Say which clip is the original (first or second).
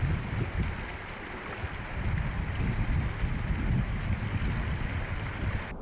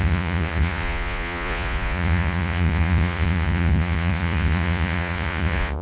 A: first